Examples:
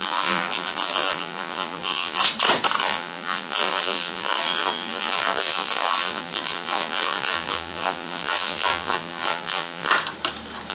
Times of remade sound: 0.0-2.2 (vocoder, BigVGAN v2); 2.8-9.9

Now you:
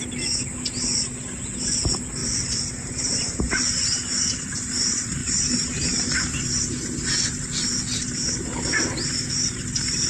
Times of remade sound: 2.2-4.7 (vocoder, BigVGAN v2)

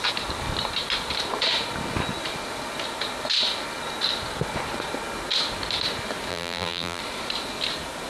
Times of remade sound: 6.3-7.0 (vocoder, BigVGAN v2)

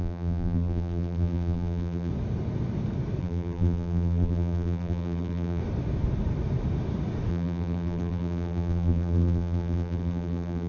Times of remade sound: 0.0-2.1 (vocoder, BigVGAN v2); 3.2-5.6; 7.3-10.7

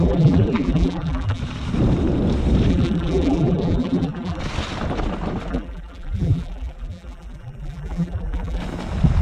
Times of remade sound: 0.0-1.4 (vocoder, BigVGAN v2); 2.7-4.4; 5.5-8.6

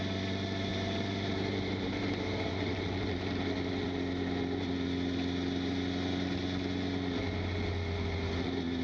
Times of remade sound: 0.7-2.5 (vocoder, BigVGAN v2)

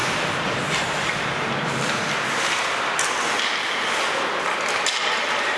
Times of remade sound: 0.0-2.1 (vocoder, BigVGAN v2)

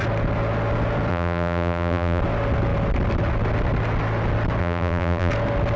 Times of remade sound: 1.1-2.2 (vocoder, BigVGAN v2); 4.6-5.3